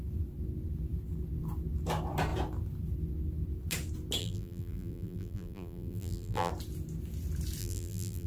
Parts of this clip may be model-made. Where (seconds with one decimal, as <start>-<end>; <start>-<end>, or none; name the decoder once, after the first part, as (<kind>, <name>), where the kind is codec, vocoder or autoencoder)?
4.2-6.5 (vocoder, BigVGAN v2); 7.6-8.3